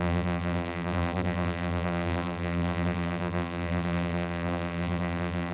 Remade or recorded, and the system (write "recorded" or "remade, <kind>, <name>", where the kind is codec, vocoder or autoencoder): remade, vocoder, BigVGAN v2